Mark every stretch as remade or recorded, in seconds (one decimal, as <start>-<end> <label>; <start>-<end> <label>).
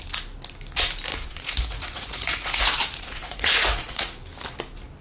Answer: 0.0-1.1 recorded; 1.1-4.1 remade; 4.1-5.0 recorded